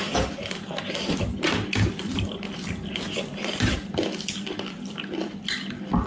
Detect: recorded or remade remade